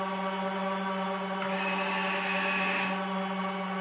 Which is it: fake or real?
real